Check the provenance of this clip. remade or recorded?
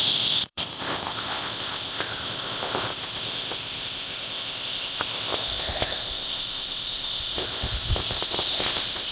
remade